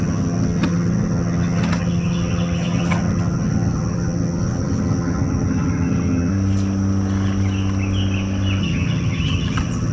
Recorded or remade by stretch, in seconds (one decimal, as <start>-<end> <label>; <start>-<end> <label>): 0.0-6.3 remade; 6.3-8.6 recorded; 8.6-9.9 remade